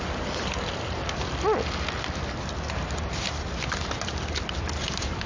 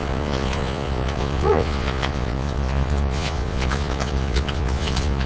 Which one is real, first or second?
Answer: first